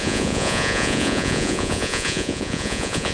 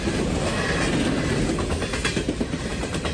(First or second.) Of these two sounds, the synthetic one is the first